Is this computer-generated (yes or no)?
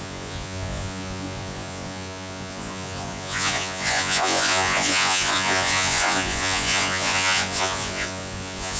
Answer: yes